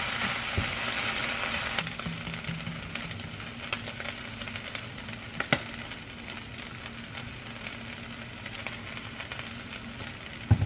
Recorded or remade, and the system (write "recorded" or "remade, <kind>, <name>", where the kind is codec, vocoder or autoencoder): recorded